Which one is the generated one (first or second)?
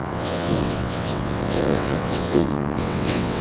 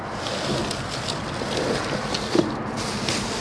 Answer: first